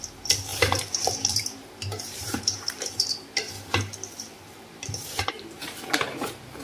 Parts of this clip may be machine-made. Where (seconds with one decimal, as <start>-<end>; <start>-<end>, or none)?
0.5-3.5; 4.7-6.6